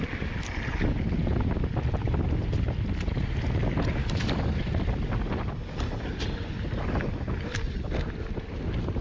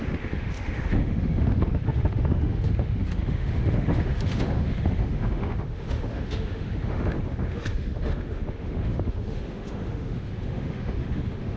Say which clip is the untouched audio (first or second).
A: first